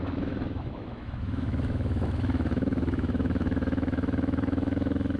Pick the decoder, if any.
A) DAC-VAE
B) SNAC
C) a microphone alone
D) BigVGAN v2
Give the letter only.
A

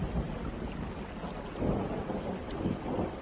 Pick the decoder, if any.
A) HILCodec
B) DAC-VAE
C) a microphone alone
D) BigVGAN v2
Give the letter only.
C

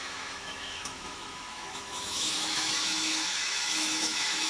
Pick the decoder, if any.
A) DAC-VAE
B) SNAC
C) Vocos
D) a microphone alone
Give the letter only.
A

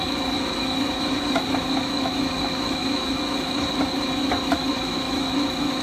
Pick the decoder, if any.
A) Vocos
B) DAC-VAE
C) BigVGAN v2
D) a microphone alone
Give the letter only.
B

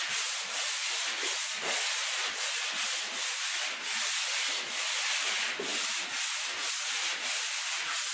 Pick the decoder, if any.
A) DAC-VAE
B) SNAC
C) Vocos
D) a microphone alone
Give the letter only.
D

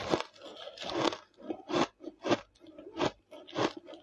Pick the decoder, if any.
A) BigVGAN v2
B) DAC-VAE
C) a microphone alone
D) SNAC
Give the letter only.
C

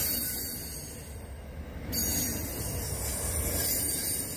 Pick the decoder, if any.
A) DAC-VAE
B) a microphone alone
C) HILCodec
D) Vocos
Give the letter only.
B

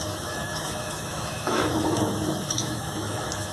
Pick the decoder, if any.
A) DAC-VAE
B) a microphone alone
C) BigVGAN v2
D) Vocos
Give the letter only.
A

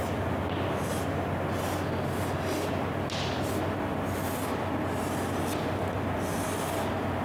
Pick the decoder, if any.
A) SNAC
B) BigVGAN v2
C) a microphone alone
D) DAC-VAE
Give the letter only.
C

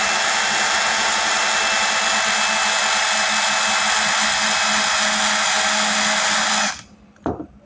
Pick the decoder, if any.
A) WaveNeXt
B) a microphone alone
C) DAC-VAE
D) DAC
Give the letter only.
B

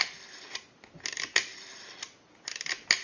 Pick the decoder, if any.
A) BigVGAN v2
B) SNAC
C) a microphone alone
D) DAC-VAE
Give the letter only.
C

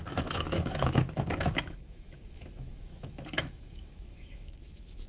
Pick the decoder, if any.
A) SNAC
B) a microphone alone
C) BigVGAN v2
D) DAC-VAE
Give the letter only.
D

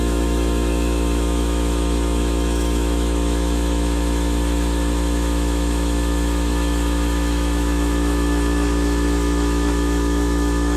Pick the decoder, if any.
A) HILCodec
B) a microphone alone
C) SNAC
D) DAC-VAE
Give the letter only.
D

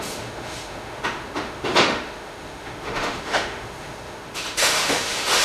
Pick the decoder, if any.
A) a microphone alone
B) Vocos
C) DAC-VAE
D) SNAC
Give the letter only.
C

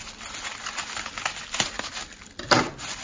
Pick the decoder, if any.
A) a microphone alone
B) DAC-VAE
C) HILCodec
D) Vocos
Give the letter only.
A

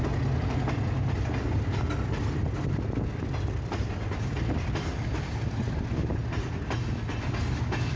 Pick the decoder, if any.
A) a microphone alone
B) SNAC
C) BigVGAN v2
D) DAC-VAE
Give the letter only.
A